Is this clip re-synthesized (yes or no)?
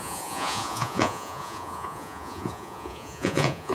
yes